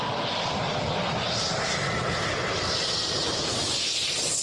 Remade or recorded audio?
recorded